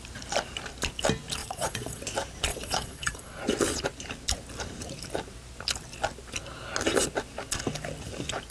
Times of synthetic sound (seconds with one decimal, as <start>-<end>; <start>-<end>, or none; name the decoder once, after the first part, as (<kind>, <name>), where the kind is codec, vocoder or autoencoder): 1.4-2.0 (vocoder, Vocos); 2.5-3.4